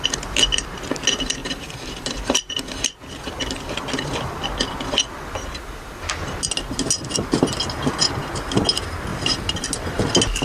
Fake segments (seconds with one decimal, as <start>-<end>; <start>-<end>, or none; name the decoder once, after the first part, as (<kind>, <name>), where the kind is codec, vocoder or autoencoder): 1.4-2.5 (vocoder, BigVGAN v2)